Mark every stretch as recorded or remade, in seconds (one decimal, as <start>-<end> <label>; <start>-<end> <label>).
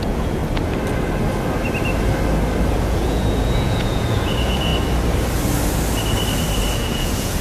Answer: 0.0-0.4 remade; 0.4-2.8 recorded; 2.8-4.7 remade; 4.7-6.7 recorded; 6.7-7.4 remade